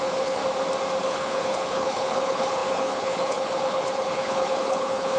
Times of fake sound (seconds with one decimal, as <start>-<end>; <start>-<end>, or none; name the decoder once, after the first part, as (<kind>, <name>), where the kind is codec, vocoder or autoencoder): 0.0-0.4 (codec, HILCodec); 1.0-5.2